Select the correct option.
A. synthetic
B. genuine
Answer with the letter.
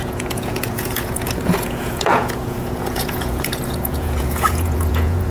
A